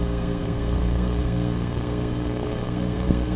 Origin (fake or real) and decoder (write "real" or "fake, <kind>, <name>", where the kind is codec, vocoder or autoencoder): fake, codec, SNAC